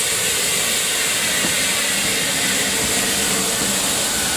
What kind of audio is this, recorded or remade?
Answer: recorded